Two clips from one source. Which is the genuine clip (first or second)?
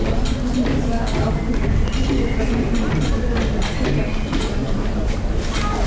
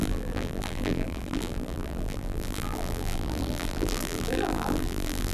first